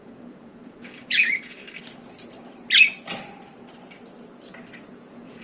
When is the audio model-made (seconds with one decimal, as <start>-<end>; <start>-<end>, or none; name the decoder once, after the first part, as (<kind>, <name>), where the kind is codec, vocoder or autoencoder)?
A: 0.0-1.6 (vocoder, Vocos); 4.8-5.4